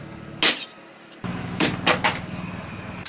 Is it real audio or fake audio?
real